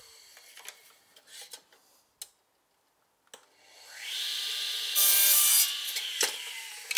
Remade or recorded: recorded